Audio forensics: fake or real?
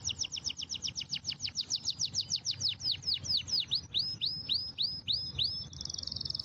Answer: real